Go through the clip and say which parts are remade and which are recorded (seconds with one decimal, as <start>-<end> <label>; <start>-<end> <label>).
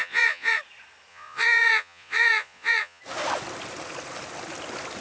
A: 0.0-0.6 remade; 0.6-1.1 recorded; 1.1-3.0 remade; 3.0-5.0 recorded